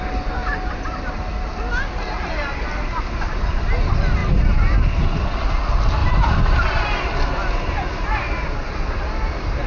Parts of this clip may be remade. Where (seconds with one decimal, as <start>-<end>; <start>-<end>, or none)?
6.0-6.9

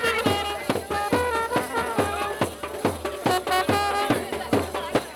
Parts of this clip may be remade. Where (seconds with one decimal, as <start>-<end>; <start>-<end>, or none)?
none

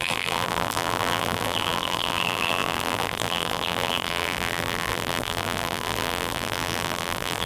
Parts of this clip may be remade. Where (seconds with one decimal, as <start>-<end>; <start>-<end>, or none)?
0.0-7.5

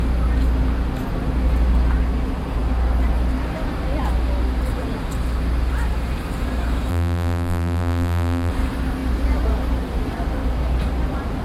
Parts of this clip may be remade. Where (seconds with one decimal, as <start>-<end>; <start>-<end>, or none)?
6.9-8.5

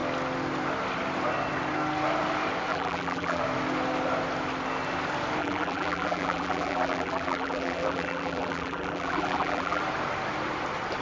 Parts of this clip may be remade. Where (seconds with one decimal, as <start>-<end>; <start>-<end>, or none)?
2.7-3.4; 5.4-9.8

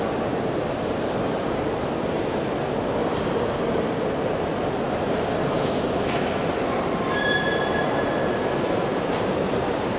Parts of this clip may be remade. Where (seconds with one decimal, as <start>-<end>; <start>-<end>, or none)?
none